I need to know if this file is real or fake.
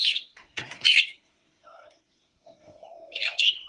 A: fake